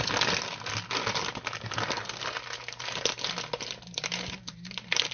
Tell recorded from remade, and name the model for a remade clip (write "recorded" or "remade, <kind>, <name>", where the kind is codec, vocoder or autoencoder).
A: recorded